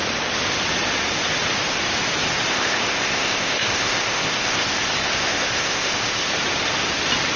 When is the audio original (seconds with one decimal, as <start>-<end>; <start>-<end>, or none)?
0.0-2.5; 6.3-7.4